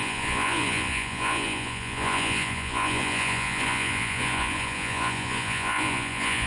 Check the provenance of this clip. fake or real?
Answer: fake